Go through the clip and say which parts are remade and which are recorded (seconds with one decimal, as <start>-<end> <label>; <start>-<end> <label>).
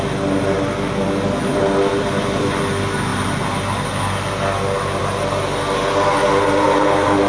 0.0-1.5 recorded; 1.5-2.6 remade; 2.6-7.3 recorded